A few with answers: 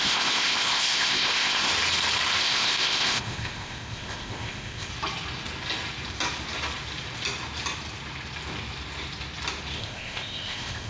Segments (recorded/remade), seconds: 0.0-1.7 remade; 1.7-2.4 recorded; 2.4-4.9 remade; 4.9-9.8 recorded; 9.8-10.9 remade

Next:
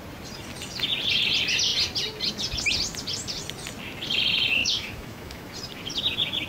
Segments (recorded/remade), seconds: 0.0-4.6 recorded; 4.6-5.5 remade; 5.5-6.5 recorded

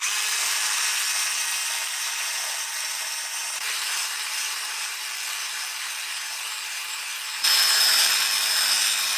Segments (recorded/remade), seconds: 0.0-1.6 recorded; 1.6-3.0 remade; 3.0-3.4 recorded; 3.4-5.0 remade; 5.0-5.4 recorded; 5.4-8.1 remade; 8.1-9.2 recorded

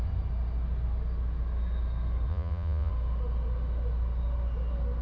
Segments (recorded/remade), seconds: 0.0-2.3 recorded; 2.3-2.9 remade; 2.9-5.0 recorded